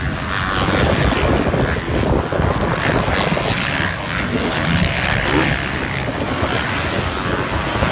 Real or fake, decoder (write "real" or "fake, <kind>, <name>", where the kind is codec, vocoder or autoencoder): real